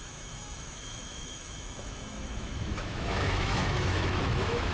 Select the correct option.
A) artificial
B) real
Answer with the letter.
A